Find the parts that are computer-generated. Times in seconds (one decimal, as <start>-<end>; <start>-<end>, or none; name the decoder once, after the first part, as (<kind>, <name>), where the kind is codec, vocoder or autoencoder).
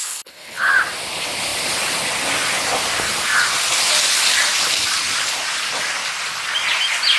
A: 0.0-0.7 (codec, HILCodec)